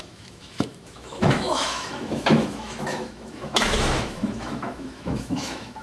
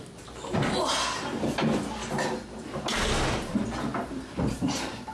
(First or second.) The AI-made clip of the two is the first